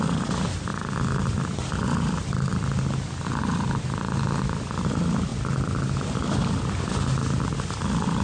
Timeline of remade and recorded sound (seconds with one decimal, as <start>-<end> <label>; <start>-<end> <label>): 0.0-8.2 recorded